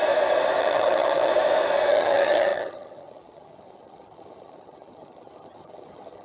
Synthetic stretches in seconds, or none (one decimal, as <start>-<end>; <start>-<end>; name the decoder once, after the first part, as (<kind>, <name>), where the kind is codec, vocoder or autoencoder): 0.6-1.3 (vocoder, HiFi-GAN); 1.9-6.2